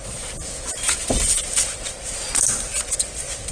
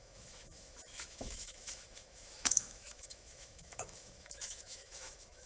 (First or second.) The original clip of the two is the first